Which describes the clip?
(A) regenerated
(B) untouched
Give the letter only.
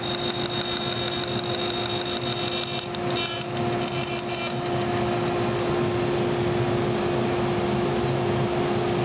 B